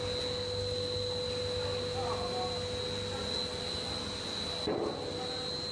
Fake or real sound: real